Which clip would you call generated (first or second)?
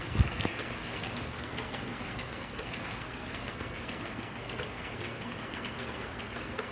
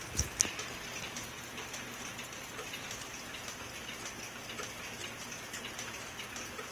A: first